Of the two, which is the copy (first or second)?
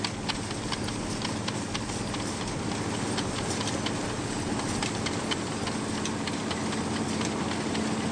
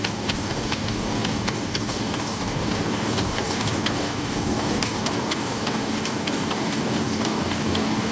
second